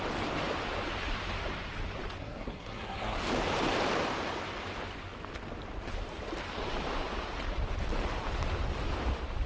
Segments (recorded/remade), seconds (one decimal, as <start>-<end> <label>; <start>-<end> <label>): 0.0-2.2 recorded; 2.2-3.2 remade; 3.2-9.5 recorded